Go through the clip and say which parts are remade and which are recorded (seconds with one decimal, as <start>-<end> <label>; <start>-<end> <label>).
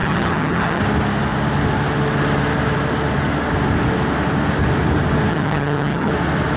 0.0-0.8 remade; 0.8-5.3 recorded; 5.3-6.1 remade; 6.1-6.6 recorded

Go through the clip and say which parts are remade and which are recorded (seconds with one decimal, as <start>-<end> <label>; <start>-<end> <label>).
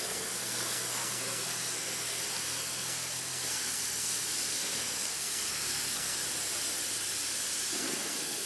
0.0-6.2 remade; 6.2-7.7 recorded; 7.7-8.5 remade